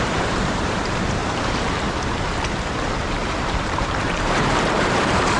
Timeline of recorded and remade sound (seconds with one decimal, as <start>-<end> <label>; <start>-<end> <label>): 0.0-5.4 remade